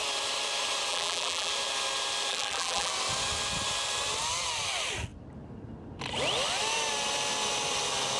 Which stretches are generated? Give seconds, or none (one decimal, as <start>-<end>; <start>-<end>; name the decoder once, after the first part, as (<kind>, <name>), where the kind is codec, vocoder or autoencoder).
0.9-1.5 (vocoder, BigVGAN v2); 2.3-2.9